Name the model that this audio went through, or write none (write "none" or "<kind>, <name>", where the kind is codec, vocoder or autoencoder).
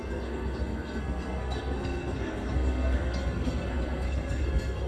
codec, SNAC